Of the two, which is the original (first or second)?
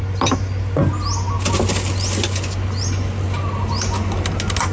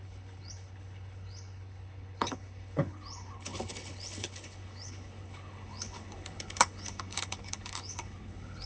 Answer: first